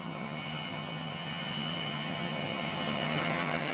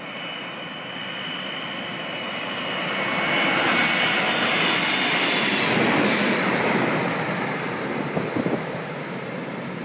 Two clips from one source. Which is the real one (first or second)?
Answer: second